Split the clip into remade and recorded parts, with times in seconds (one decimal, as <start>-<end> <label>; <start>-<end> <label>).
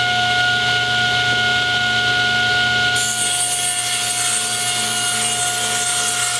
0.0-6.4 recorded